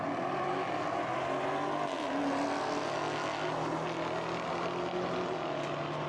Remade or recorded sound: recorded